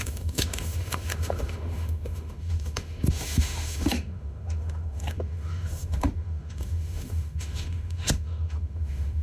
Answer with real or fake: fake